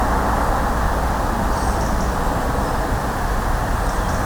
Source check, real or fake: real